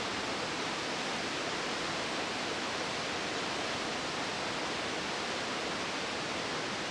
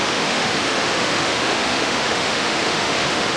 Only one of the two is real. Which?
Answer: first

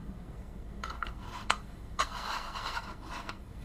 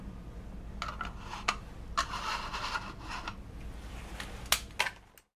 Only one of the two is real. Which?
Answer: second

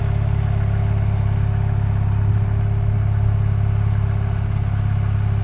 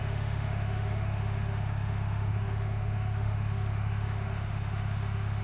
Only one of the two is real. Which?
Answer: first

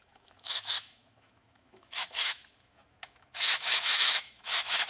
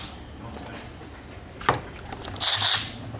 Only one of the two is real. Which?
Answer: second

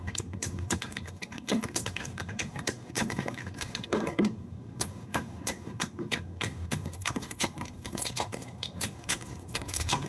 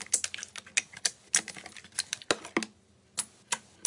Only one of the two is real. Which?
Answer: second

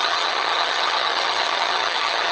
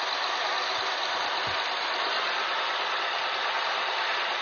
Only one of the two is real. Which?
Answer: second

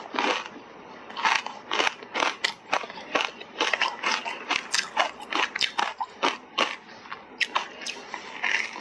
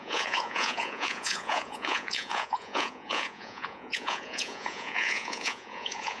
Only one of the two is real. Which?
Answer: first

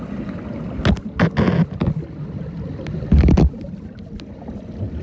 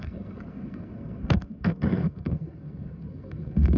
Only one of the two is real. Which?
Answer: first